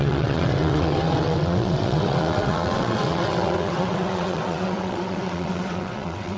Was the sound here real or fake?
fake